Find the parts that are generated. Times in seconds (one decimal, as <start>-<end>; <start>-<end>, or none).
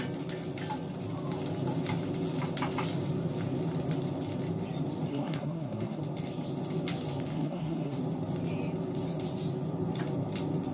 5.1-6.0; 7.3-8.0